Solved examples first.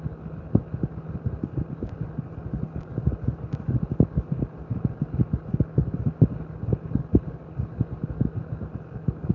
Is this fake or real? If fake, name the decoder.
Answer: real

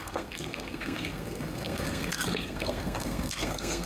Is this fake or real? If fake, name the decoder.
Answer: fake, codec, SNAC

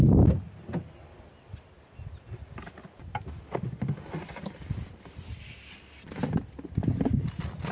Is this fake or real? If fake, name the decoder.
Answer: real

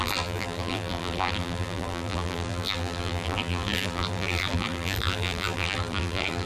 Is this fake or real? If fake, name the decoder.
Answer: fake, vocoder, BigVGAN v2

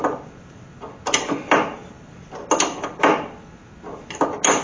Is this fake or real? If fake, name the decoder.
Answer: real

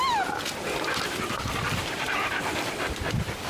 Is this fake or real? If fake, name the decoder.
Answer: fake, vocoder, BigVGAN v2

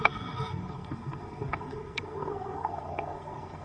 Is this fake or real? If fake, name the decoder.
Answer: fake, codec, SNAC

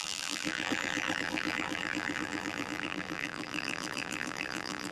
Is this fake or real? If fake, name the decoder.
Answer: fake, vocoder, BigVGAN v2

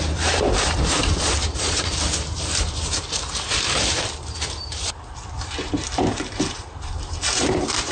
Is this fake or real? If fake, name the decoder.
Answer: fake, vocoder, BigVGAN v2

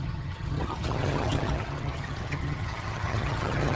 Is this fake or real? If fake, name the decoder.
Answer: fake, vocoder, HiFi-GAN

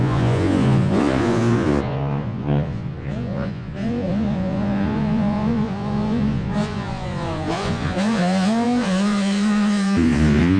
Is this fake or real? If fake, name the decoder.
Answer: fake, vocoder, Vocos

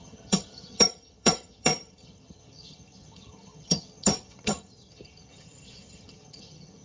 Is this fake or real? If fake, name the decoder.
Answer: fake, vocoder, HiFi-GAN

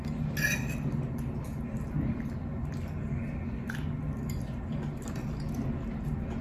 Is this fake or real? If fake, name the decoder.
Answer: real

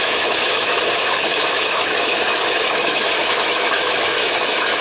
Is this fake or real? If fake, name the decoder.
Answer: fake, autoencoder, DAC-VAE